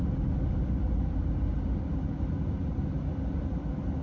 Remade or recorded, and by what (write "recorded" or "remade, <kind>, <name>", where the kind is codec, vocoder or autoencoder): recorded